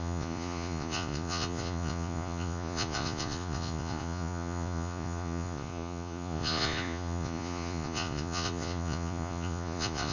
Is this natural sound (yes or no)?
no